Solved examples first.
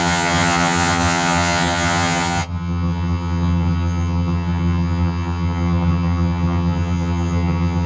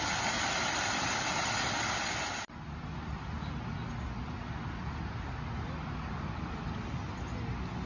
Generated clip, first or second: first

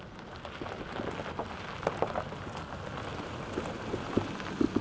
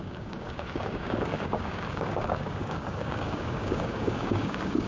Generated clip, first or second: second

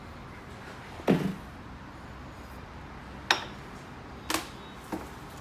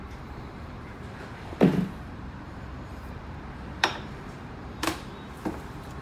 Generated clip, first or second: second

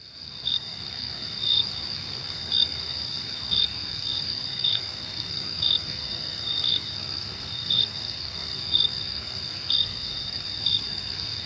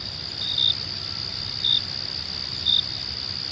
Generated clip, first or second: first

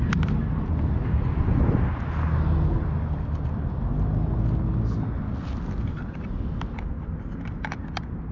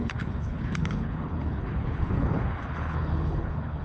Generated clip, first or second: second